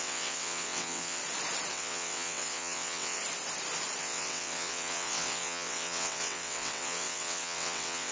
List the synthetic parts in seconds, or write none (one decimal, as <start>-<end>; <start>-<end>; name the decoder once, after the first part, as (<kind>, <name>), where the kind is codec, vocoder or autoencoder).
0.0-1.2 (vocoder, WaveNeXt); 1.7-3.2; 4.0-8.1